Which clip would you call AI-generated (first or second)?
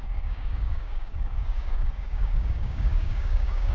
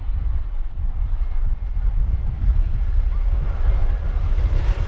first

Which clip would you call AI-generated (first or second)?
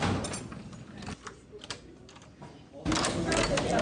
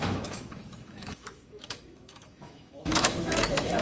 second